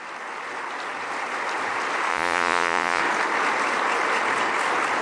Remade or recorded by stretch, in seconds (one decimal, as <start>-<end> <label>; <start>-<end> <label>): 0.0-2.1 recorded; 2.1-3.0 remade; 3.0-5.0 recorded